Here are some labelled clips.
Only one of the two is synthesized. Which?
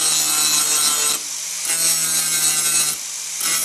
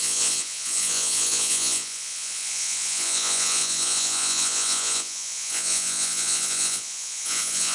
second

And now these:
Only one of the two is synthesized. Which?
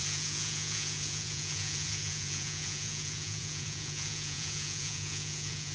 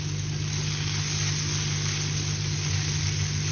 first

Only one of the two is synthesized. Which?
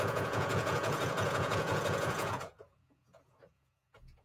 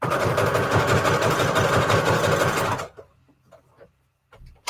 first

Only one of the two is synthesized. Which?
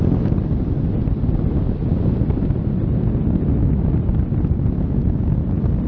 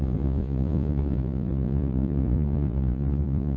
second